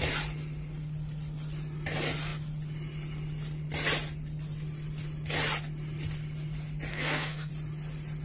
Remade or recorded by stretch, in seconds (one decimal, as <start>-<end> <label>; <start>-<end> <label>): 0.0-6.9 recorded; 6.9-7.5 remade; 7.5-8.2 recorded